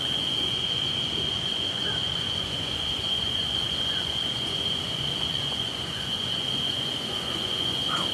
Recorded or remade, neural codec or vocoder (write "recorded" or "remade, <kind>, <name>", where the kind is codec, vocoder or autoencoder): remade, vocoder, Vocos